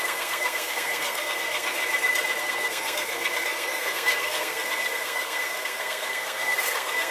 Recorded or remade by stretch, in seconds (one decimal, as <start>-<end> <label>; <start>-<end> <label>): 0.0-1.8 remade; 1.8-2.4 recorded; 2.4-7.1 remade